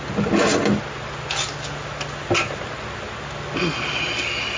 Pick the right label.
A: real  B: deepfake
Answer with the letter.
A